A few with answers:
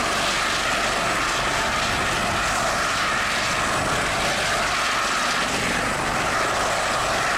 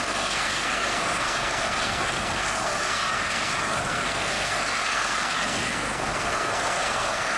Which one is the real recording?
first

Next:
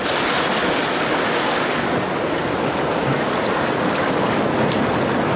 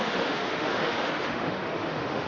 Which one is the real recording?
first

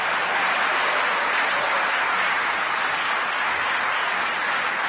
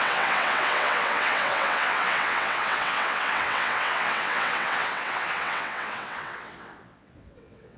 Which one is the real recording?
first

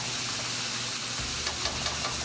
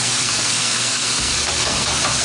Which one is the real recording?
first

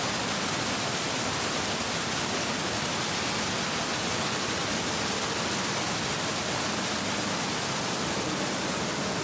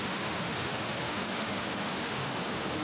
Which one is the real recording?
first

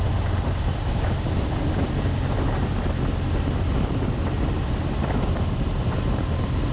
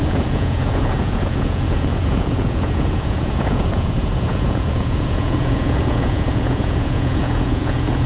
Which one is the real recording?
first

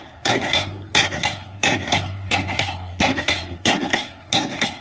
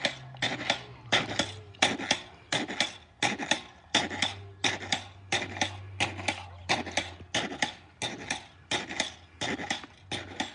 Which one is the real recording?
second